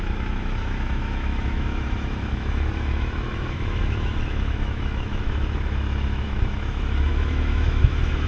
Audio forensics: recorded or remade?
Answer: remade